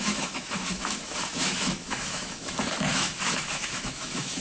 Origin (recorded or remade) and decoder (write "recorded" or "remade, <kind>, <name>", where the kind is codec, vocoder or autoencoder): remade, autoencoder, DAC-VAE